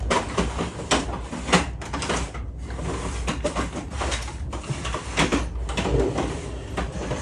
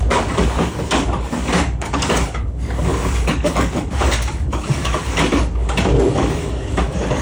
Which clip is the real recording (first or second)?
first